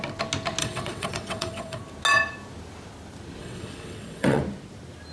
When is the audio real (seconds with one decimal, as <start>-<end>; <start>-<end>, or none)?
0.0-0.6; 1.8-3.4; 4.4-5.1